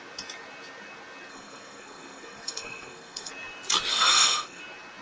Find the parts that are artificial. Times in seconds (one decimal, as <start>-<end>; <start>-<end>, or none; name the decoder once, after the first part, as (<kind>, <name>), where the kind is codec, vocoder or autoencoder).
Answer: 1.3-3.3 (codec, SNAC); 3.9-4.6